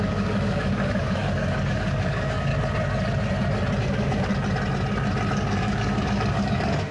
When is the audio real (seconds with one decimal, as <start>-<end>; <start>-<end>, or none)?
2.5-3.8; 4.3-5.3